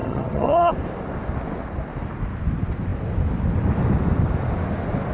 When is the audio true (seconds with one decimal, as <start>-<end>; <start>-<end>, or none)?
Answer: 0.7-5.1